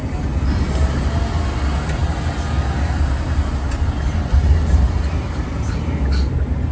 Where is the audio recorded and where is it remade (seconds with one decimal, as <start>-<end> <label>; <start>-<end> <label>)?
0.0-6.7 recorded